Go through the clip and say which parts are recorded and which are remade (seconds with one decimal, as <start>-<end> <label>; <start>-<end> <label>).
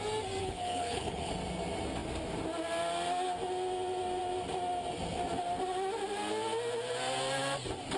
0.0-0.4 recorded; 0.4-1.3 remade; 1.3-8.0 recorded